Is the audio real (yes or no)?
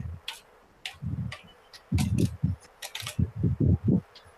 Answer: yes